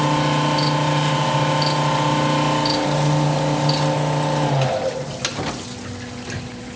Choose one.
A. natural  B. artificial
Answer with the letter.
A